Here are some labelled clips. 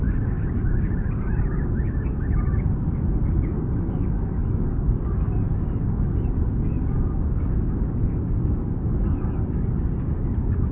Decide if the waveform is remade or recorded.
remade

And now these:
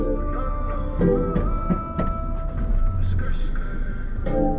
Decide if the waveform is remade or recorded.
recorded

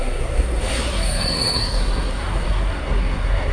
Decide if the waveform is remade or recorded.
remade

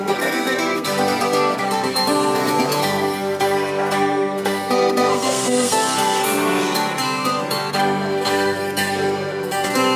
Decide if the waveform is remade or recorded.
remade